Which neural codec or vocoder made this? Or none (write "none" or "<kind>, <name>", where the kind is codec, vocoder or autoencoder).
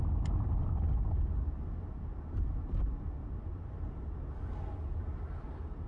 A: none